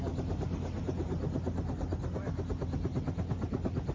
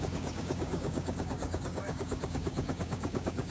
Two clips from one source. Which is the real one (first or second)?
first